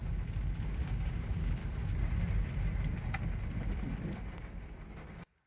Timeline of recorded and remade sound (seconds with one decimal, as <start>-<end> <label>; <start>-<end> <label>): 0.0-0.7 recorded; 0.7-1.6 remade; 1.6-4.9 recorded; 4.9-5.5 remade